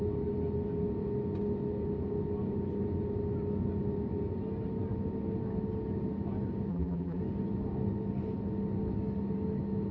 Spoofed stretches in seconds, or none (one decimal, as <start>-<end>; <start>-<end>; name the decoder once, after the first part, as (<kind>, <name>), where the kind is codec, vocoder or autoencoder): 6.7-7.2 (vocoder, BigVGAN v2)